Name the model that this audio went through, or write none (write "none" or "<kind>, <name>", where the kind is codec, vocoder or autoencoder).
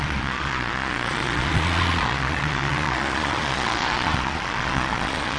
vocoder, Vocos